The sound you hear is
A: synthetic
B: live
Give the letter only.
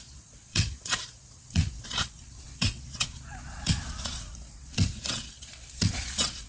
A